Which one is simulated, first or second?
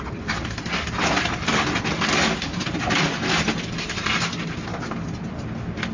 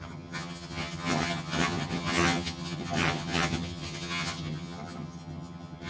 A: second